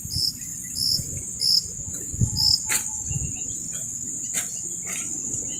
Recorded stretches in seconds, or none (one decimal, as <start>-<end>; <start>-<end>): 0.0-5.6